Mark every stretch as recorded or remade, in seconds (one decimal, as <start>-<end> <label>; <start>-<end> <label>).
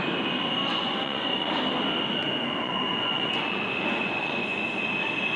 0.0-0.6 recorded; 0.6-1.6 remade; 1.6-2.2 recorded; 2.2-4.6 remade; 4.6-5.4 recorded